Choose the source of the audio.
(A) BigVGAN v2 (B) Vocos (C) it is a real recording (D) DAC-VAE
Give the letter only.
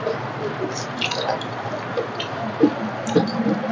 C